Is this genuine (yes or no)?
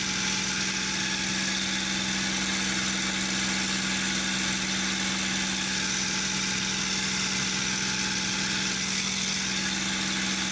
yes